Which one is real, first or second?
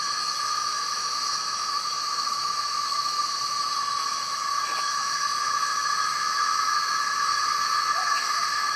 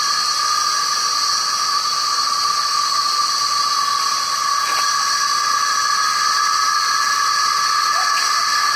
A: second